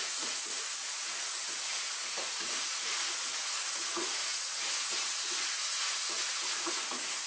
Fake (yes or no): yes